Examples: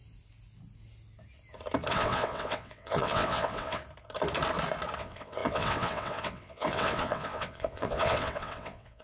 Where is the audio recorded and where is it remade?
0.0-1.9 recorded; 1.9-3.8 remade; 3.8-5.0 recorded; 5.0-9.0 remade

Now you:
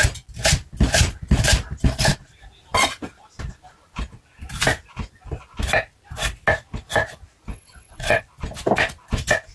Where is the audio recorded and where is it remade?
0.0-7.5 recorded; 7.5-8.2 remade; 8.2-9.5 recorded

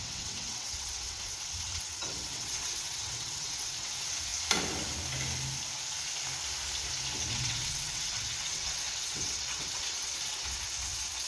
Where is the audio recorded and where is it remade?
0.0-4.3 remade; 4.3-7.3 recorded; 7.3-11.3 remade

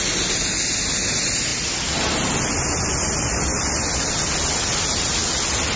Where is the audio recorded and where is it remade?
0.0-5.8 recorded